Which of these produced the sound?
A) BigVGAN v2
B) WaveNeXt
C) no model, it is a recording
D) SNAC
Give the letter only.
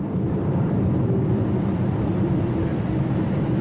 A